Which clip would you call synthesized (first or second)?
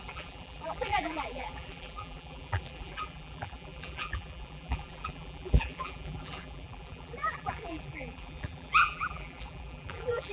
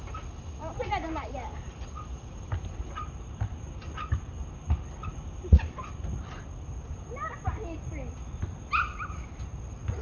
first